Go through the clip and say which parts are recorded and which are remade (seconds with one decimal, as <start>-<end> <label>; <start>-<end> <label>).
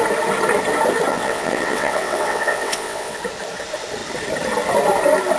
0.0-1.1 recorded; 1.1-3.2 remade; 3.2-5.4 recorded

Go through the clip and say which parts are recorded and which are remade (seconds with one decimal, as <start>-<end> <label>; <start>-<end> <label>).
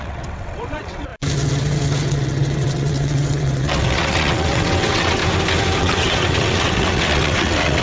0.0-1.1 remade; 1.1-2.1 recorded; 2.1-5.2 remade; 5.2-5.8 recorded; 5.8-7.8 remade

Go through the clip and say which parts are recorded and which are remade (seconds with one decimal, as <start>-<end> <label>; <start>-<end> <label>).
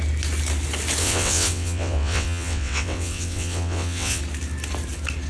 0.0-1.0 recorded; 1.0-4.2 remade; 4.2-5.3 recorded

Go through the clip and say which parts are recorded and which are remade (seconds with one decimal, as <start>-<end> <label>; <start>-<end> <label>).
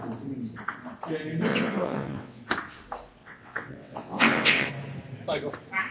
0.0-1.5 recorded; 1.5-2.4 remade; 2.4-3.2 recorded; 3.2-4.7 remade; 4.7-5.9 recorded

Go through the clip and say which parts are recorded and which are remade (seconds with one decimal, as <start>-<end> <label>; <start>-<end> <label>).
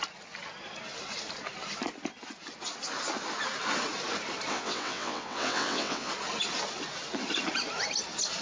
0.0-4.5 recorded; 4.5-6.1 remade; 6.1-8.4 recorded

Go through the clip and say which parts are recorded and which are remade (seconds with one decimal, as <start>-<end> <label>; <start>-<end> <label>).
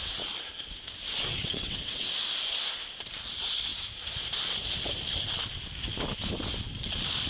0.0-1.3 recorded; 1.3-2.1 remade; 2.1-7.3 recorded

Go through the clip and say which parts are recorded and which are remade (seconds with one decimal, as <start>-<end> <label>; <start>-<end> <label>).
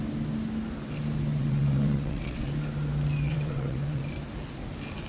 0.0-1.4 recorded; 1.4-2.5 remade; 2.5-3.3 recorded; 3.3-4.0 remade; 4.0-5.1 recorded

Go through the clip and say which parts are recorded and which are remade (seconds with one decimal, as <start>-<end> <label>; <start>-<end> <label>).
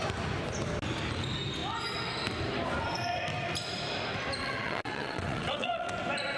0.0-4.4 recorded; 4.4-5.9 remade; 5.9-6.4 recorded